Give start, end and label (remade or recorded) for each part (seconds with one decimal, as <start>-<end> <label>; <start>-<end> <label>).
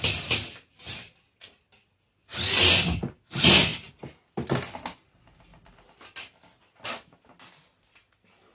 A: 0.0-8.5 recorded